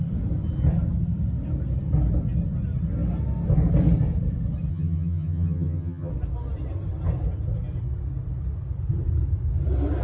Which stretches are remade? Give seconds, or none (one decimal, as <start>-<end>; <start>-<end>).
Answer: 4.7-6.1